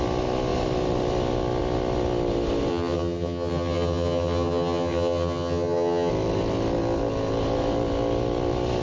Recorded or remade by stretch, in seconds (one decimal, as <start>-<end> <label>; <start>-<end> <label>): 0.0-2.7 recorded; 2.7-6.1 remade; 6.1-8.8 recorded